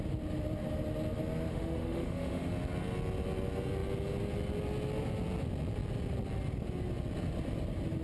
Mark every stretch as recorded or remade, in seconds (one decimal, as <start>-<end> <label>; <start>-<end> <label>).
0.0-1.5 recorded; 1.5-2.5 remade; 2.5-8.0 recorded